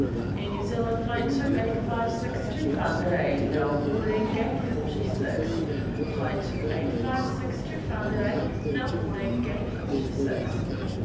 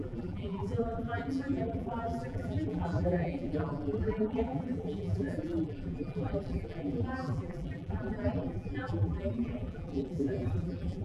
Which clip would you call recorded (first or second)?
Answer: first